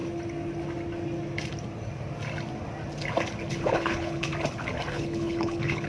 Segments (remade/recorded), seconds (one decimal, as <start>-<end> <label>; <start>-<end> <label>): 0.0-3.5 recorded; 3.5-4.3 remade; 4.3-4.9 recorded; 4.9-5.9 remade